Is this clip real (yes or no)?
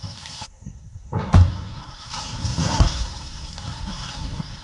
no